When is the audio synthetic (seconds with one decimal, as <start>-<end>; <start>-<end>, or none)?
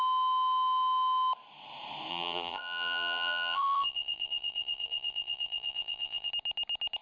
2.1-6.3